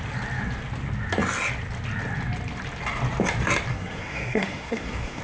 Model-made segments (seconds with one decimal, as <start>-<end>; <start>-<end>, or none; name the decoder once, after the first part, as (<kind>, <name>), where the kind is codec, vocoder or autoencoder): 3.7-5.2 (codec, SNAC)